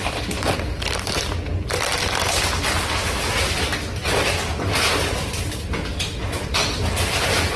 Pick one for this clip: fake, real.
real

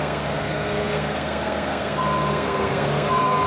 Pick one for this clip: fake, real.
fake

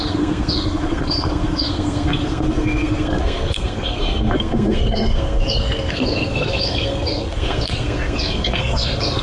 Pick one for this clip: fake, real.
fake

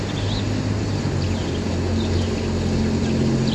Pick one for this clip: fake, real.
real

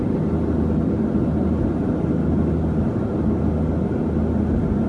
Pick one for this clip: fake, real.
real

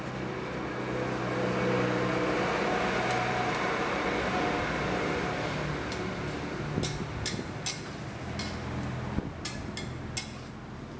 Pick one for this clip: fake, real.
real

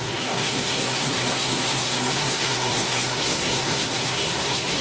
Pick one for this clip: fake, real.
fake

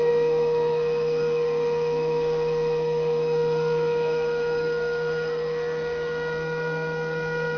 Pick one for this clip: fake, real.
fake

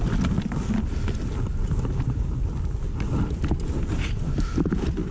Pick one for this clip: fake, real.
real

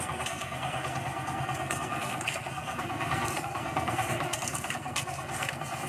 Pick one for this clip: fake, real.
fake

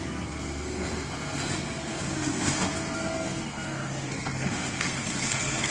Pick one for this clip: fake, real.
fake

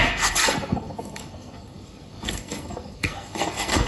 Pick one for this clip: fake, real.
fake